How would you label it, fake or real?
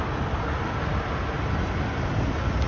real